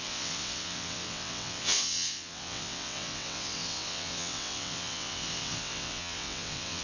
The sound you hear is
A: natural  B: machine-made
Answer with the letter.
B